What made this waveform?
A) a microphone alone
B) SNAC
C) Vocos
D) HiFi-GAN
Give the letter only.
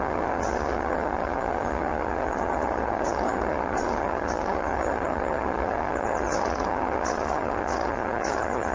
D